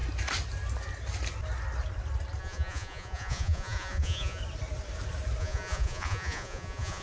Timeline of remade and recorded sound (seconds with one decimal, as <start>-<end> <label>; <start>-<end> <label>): 0.0-2.4 recorded; 2.4-4.4 remade; 4.4-5.4 recorded; 5.4-7.0 remade